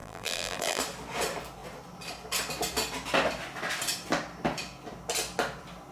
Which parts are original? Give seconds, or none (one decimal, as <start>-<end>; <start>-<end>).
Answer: 0.8-5.9